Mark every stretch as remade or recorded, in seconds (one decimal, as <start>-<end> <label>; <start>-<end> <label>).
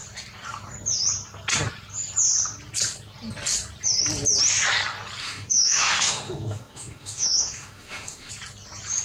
0.0-5.2 recorded; 5.2-8.3 remade; 8.3-9.0 recorded